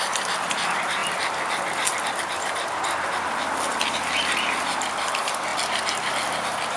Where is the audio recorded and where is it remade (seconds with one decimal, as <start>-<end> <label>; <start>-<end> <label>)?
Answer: 0.0-6.8 recorded